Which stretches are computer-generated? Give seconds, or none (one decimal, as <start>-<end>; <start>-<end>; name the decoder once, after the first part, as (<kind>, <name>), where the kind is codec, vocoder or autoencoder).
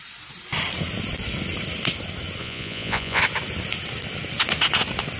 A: 2.4-3.2 (vocoder, Vocos)